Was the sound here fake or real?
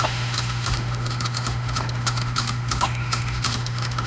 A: fake